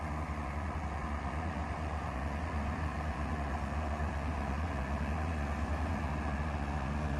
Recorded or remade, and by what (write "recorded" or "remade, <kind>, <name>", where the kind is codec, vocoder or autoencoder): remade, vocoder, Vocos